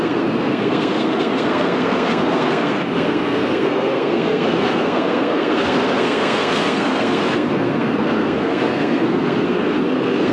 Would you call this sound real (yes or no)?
no